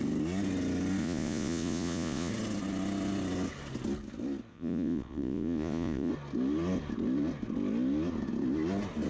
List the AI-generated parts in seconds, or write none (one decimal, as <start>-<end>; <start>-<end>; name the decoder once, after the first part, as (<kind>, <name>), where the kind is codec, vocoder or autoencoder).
1.0-2.3 (vocoder, Vocos); 4.5-6.1